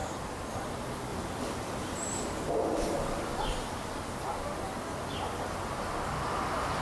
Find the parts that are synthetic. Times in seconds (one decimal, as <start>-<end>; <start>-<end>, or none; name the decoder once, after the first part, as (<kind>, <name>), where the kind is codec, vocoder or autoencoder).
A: 0.0-0.6 (vocoder, BigVGAN v2); 1.1-2.5